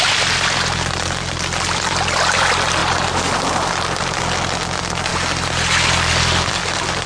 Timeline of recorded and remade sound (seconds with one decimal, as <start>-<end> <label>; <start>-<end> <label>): 0.0-7.1 recorded